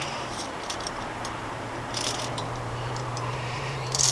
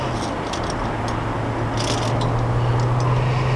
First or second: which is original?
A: second